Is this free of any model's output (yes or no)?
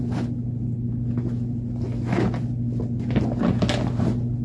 yes